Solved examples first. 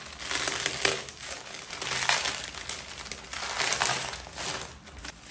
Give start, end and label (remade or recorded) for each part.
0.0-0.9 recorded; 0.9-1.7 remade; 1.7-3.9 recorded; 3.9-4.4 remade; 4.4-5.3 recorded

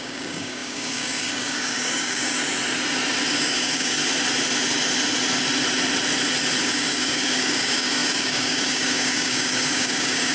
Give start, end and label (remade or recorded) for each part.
0.0-2.4 remade; 2.4-3.4 recorded; 3.4-4.0 remade; 4.0-6.6 recorded; 6.6-10.3 remade

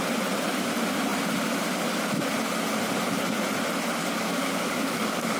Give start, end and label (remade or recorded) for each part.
0.0-4.0 recorded; 4.0-5.4 remade

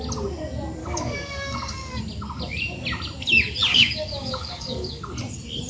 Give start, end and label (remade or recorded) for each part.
0.0-0.8 recorded; 0.8-2.0 remade; 2.0-3.7 recorded; 3.7-5.1 remade; 5.1-5.7 recorded

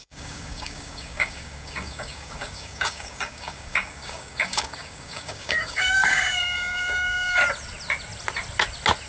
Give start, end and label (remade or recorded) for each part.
0.0-7.4 remade; 7.4-9.1 recorded